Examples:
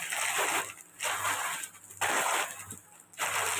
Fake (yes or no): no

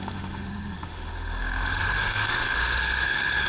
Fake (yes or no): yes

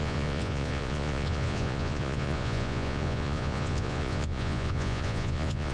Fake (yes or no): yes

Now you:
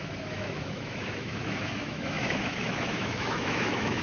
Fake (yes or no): yes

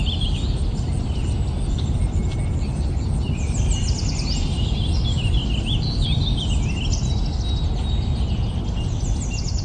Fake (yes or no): no